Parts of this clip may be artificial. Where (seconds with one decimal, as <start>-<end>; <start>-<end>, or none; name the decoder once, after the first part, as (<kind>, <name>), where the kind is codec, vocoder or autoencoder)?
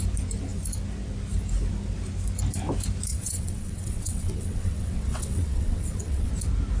3.1-6.3 (vocoder, WaveNeXt)